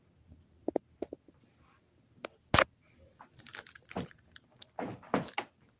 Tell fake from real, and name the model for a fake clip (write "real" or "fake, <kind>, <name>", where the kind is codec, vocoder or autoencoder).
real